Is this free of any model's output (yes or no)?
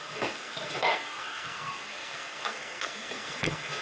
no